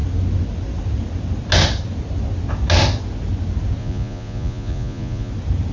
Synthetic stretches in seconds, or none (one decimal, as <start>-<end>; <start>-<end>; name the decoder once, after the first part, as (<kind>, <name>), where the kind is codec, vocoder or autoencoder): 3.8-5.3 (vocoder, Vocos)